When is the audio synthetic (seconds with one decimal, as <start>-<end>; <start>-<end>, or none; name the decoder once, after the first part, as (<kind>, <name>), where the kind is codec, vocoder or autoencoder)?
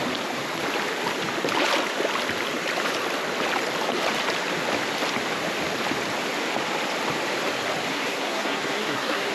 7.9-9.3 (codec, SNAC)